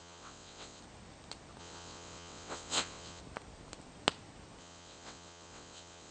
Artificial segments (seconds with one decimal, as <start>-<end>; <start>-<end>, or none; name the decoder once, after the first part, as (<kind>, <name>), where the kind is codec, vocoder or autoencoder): 0.0-0.8 (vocoder, WaveNeXt); 1.6-3.2; 4.6-6.1